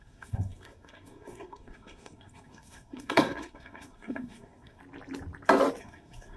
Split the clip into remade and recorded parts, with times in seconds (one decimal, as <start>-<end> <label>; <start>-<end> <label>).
0.0-4.8 remade; 4.8-5.8 recorded; 5.8-6.4 remade